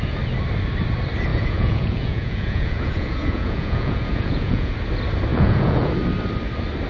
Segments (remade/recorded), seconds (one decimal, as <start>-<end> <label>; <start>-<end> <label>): 0.0-1.3 recorded; 1.3-4.7 remade; 4.7-5.3 recorded; 5.3-5.9 remade; 5.9-6.9 recorded